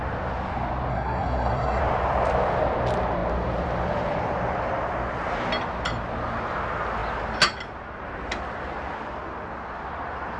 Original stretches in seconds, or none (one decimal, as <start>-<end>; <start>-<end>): 0.0-0.9; 1.8-10.4